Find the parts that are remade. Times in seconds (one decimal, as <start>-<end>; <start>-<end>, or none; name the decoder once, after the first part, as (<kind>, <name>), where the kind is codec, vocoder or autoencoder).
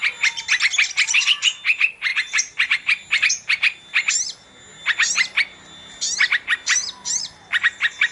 none